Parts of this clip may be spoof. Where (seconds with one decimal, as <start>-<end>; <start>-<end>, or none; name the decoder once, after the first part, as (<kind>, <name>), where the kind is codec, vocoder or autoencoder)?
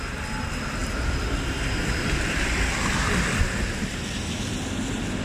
none